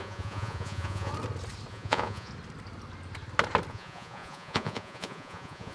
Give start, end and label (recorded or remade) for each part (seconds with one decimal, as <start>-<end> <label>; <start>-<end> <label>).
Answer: 0.0-1.1 remade; 1.1-1.7 recorded; 1.7-2.3 remade; 2.3-3.7 recorded; 3.7-5.7 remade